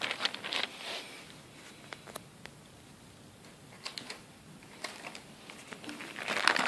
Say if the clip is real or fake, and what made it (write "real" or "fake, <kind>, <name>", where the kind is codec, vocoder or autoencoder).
fake, vocoder, BigVGAN v2